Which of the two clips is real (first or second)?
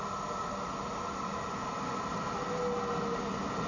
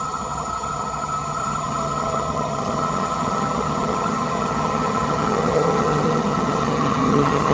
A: first